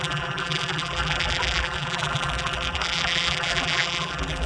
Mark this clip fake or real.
fake